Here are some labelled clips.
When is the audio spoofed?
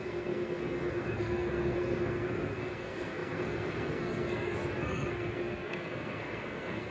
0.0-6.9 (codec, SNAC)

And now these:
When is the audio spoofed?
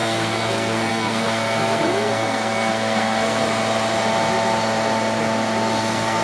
0.0-3.4 (codec, SNAC); 5.8-6.2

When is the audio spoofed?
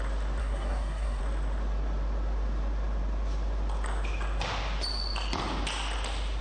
0.4-1.2 (codec, SNAC)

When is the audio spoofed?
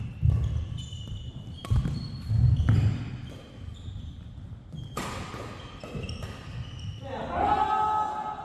none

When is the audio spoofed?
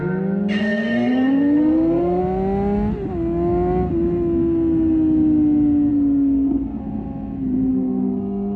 0.6-2.2 (codec, SNAC); 5.9-6.8; 7.7-8.6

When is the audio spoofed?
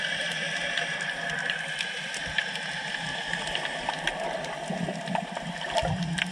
none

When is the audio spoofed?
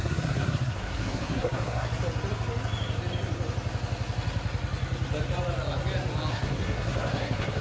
0.0-1.9 (codec, SNAC); 6.3-7.6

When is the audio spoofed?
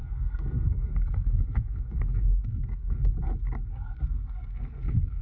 0.0-3.1 (codec, SNAC); 3.7-5.2